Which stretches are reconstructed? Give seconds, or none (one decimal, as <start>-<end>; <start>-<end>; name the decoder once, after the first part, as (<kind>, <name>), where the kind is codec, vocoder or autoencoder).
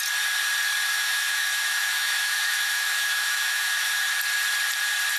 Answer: 0.9-4.0 (autoencoder, DAC-VAE)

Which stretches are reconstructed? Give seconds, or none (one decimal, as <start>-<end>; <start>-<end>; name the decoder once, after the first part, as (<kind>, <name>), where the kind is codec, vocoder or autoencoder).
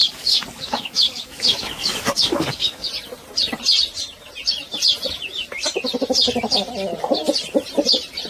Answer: 0.0-2.9 (codec, DAC)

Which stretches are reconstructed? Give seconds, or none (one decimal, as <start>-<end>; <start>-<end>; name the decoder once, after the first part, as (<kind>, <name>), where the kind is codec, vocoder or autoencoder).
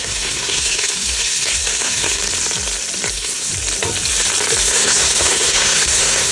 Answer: 0.0-2.2 (codec, SNAC); 3.1-3.5; 4.6-6.3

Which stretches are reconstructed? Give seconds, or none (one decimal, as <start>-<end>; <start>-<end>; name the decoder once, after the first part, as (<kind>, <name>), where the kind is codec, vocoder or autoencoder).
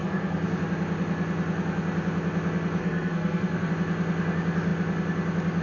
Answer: 0.0-0.6 (codec, SNAC); 2.8-3.7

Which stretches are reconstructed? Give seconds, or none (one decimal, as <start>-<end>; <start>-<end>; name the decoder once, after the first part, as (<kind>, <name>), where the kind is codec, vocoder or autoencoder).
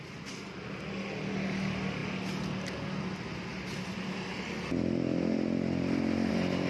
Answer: none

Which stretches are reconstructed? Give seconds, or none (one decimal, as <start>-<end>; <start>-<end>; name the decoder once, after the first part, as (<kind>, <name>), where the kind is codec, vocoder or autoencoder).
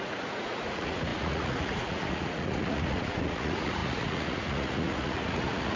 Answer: 0.0-5.8 (vocoder, Vocos)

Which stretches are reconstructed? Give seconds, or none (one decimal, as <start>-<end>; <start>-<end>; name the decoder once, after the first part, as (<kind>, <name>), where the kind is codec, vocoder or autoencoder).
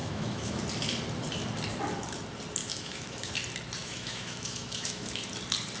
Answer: 0.0-0.6 (autoencoder, DAC-VAE); 2.6-3.3; 3.8-5.3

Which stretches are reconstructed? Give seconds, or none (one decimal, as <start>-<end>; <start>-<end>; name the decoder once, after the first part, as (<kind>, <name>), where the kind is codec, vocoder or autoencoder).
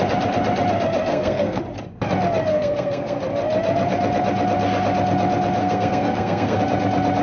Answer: 1.1-1.6 (codec, SNAC); 2.5-3.2; 5.6-6.6